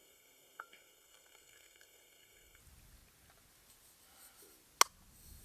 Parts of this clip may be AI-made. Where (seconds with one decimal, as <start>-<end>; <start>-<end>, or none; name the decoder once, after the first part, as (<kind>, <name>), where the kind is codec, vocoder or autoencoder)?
0.0-2.6 (codec, SNAC)